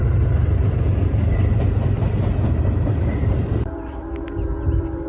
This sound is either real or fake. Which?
fake